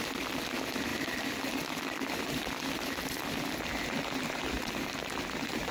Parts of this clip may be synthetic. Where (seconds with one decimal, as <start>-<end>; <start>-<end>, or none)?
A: none